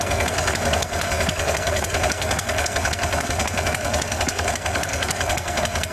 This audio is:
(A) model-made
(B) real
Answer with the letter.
A